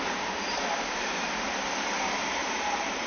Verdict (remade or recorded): remade